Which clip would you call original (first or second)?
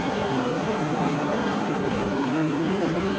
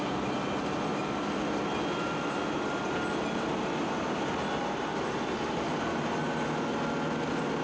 second